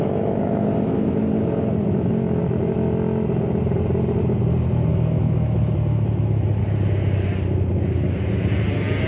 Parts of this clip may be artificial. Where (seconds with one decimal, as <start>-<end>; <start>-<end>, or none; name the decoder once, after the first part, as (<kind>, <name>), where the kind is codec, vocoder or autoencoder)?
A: 0.0-2.4 (autoencoder, DAC-VAE); 4.9-6.6